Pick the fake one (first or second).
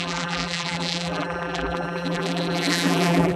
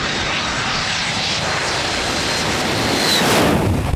first